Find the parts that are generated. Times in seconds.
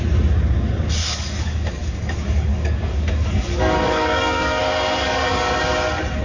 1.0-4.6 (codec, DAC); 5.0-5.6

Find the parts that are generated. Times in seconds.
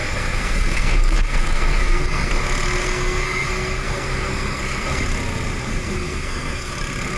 0.0-2.3 (codec, SNAC); 2.8-5.0; 5.6-6.7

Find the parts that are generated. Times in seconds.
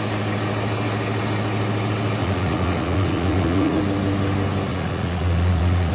2.2-3.8 (vocoder, Vocos); 4.7-5.9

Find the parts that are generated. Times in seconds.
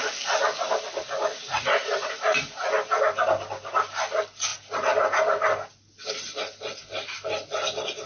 1.3-2.2 (vocoder, Vocos)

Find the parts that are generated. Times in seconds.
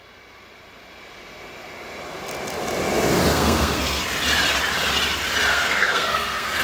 3.3-4.0 (codec, SNAC); 5.5-6.6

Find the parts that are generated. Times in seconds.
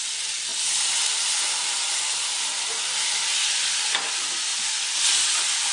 none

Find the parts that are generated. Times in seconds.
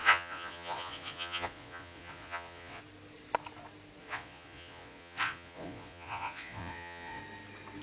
0.0-2.8 (vocoder, Vocos); 4.0-7.2